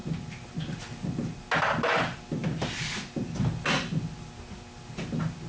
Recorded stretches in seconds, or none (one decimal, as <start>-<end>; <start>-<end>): 0.0-5.5